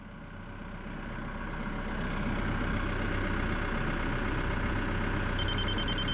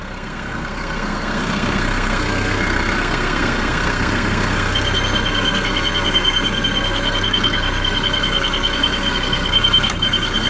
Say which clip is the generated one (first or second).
second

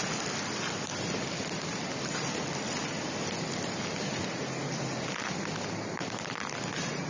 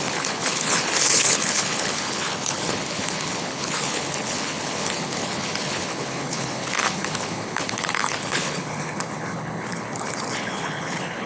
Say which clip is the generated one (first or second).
second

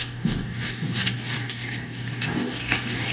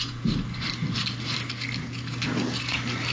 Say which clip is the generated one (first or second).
first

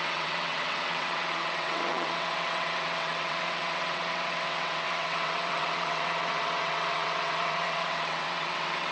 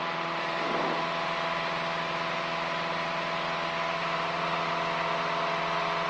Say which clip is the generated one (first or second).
first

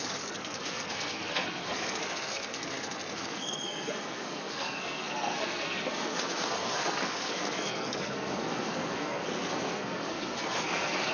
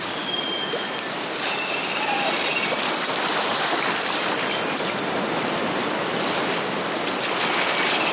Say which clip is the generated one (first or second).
first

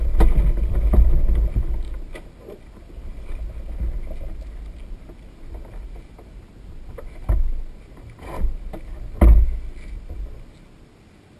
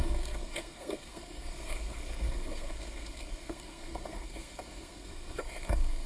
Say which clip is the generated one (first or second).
second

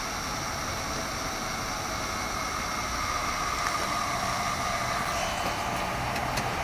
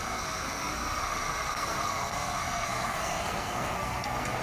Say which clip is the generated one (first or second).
second